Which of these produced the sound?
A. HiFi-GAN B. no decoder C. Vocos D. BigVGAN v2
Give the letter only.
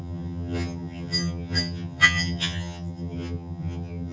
A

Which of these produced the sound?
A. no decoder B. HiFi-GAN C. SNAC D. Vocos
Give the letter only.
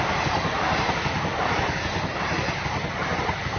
A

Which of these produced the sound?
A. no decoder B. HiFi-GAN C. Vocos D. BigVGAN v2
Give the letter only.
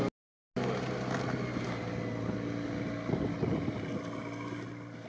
A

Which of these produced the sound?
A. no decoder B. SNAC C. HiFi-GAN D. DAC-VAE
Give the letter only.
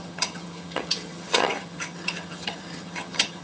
C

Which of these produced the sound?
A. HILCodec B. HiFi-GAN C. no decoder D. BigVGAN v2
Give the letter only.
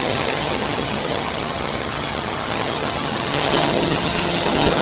B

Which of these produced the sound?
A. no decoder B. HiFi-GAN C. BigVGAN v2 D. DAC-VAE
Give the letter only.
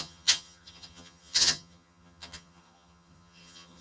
B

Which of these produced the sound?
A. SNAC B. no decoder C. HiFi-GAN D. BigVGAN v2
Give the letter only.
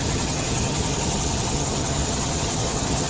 C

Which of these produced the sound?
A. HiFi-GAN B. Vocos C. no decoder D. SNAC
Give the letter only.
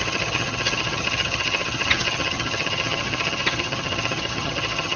A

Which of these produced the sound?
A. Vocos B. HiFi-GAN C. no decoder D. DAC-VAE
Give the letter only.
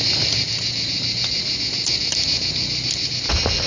C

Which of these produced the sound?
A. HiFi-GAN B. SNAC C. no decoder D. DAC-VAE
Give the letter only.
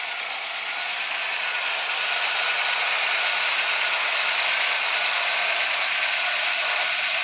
C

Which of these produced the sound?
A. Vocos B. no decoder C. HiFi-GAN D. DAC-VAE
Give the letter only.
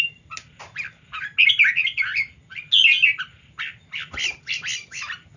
B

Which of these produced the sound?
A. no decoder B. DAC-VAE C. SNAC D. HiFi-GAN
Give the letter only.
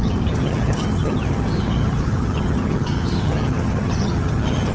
D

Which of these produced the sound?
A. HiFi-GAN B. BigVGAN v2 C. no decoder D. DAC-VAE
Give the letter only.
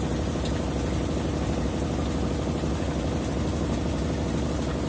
C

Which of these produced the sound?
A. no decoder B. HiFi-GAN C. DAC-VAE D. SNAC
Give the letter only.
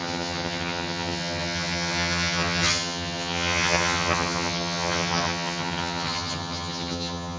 B